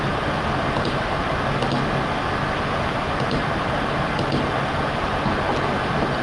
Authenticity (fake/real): real